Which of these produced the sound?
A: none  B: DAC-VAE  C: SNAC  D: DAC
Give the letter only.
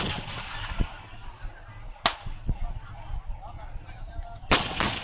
A